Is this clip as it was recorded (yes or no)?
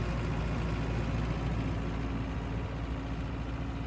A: yes